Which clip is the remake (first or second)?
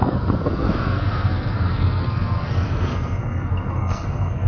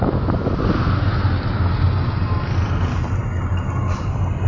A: first